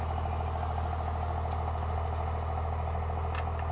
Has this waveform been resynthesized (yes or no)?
no